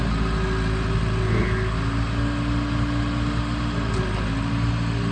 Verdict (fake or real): real